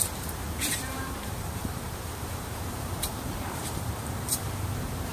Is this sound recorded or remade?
remade